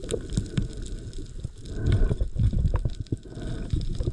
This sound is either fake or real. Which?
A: real